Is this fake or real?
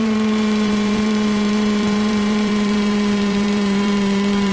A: fake